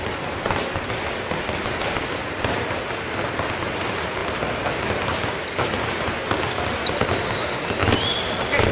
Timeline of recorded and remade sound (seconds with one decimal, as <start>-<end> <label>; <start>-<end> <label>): 0.0-8.7 recorded